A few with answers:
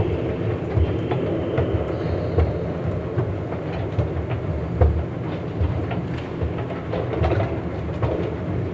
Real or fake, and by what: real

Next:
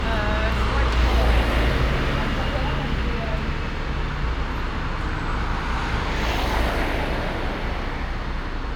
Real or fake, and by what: real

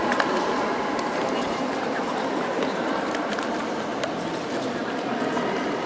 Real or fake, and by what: fake, vocoder, BigVGAN v2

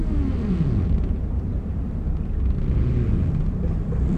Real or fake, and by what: real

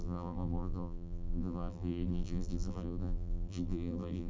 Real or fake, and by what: fake, vocoder, BigVGAN v2